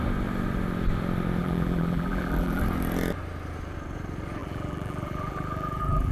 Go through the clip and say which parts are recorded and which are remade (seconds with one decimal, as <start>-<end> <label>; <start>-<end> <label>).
0.0-1.4 recorded; 1.4-2.6 remade; 2.6-4.4 recorded; 4.4-6.1 remade